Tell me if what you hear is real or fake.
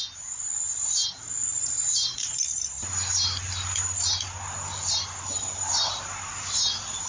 real